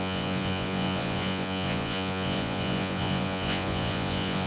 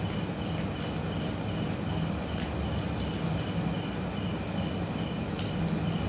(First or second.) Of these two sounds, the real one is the second